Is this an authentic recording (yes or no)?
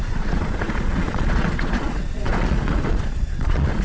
no